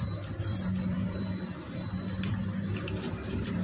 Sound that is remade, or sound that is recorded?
recorded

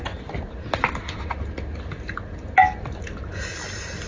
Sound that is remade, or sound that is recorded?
recorded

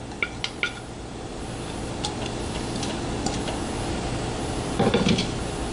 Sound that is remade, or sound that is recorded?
recorded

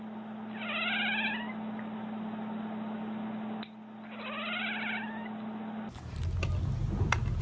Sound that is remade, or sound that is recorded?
recorded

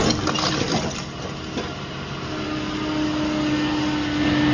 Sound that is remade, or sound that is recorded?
recorded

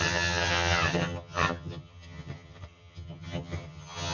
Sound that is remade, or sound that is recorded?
remade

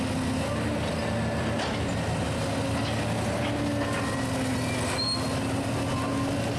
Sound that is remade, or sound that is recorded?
recorded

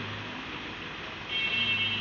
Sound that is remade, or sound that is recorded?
recorded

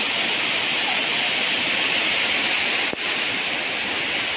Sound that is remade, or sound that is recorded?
recorded